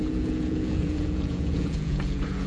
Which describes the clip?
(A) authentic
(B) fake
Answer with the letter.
B